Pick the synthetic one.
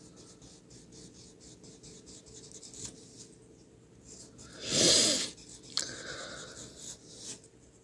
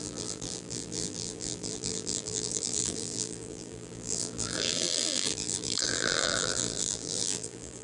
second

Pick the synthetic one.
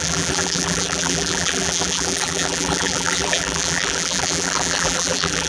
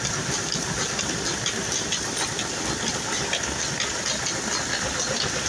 first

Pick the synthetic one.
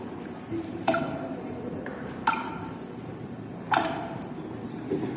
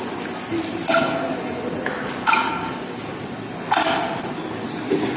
first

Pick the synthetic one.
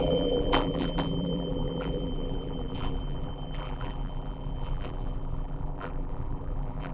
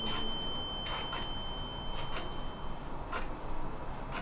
first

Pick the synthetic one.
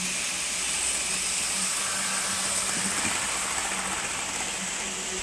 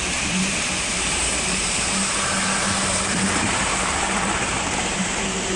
second